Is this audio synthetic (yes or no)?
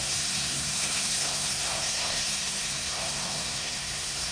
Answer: yes